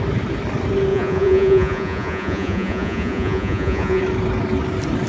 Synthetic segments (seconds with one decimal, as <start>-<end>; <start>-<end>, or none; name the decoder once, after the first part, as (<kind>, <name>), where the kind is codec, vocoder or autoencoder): 0.9-4.0 (vocoder, Vocos)